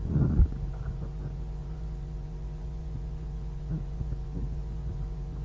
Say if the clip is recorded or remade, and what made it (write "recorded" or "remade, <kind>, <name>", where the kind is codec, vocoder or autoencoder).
remade, vocoder, Vocos